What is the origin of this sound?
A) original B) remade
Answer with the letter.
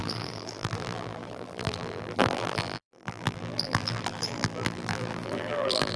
B